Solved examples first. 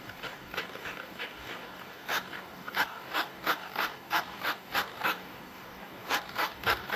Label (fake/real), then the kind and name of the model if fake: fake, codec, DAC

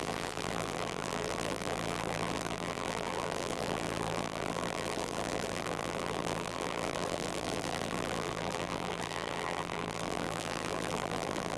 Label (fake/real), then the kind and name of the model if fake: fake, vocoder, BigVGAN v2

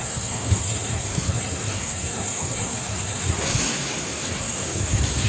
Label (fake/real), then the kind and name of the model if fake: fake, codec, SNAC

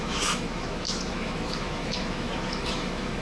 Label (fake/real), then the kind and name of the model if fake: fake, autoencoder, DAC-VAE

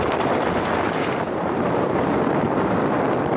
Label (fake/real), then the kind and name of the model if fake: real